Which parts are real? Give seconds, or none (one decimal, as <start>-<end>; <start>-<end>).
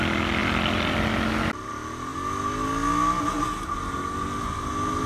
0.0-5.1